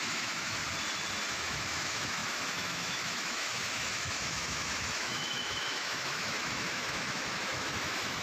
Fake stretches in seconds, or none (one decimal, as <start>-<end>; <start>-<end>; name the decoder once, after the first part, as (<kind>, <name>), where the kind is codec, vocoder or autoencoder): 0.0-0.6 (autoencoder, DAC-VAE); 1.3-8.2